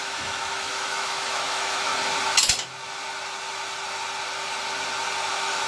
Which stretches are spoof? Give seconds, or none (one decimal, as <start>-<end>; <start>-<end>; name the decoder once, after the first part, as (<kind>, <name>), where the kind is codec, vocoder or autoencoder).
0.0-1.9 (autoencoder, DAC-VAE); 5.3-5.7